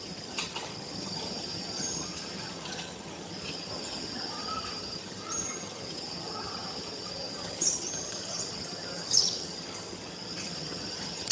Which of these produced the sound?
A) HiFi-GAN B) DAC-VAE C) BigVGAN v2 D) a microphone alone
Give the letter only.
A